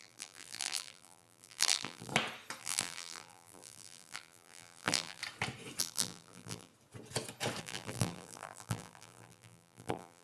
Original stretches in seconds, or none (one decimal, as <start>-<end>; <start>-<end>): 2.1-2.6; 5.2-5.8; 6.7-7.6